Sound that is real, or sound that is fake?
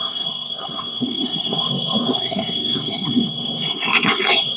fake